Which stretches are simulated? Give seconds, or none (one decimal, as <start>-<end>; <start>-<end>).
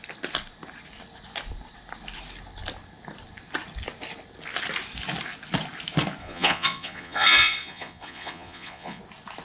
6.2-9.0